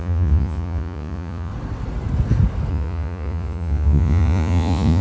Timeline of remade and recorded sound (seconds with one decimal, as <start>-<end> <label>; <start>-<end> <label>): 0.0-1.5 remade; 1.5-2.7 recorded; 2.7-5.0 remade